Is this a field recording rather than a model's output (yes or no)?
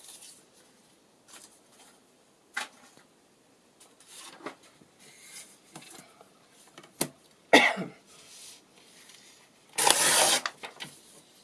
yes